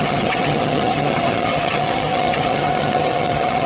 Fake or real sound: fake